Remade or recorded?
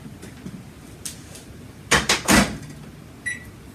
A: recorded